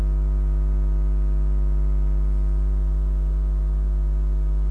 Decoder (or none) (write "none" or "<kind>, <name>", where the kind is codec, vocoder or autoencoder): none